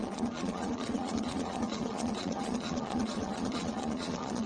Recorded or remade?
remade